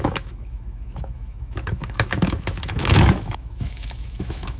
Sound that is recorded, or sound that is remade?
remade